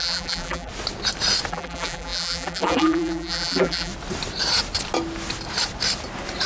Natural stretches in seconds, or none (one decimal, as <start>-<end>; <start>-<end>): 0.7-1.5; 3.9-6.5

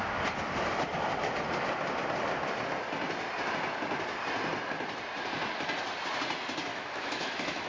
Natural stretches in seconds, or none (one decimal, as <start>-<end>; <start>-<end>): 0.0-6.7

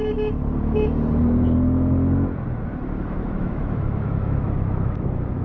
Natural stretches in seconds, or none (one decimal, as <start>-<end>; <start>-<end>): 0.0-3.0

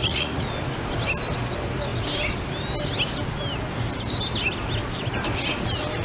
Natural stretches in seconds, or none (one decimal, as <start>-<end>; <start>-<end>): 0.5-6.0